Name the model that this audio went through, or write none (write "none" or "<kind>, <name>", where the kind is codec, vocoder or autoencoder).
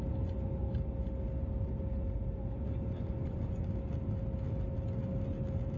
none